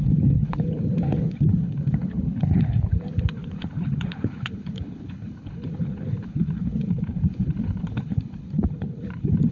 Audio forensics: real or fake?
fake